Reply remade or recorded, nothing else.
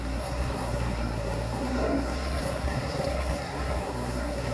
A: remade